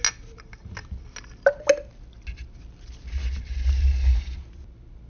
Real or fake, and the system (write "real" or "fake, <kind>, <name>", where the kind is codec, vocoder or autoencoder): real